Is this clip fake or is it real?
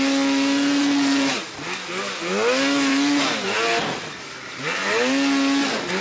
real